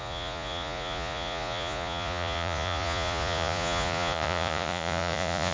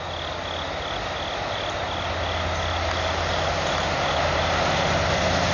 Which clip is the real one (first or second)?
second